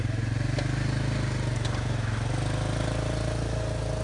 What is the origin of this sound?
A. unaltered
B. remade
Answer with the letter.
A